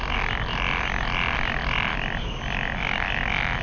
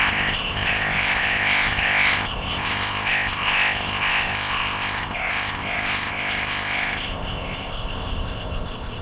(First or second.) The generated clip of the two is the second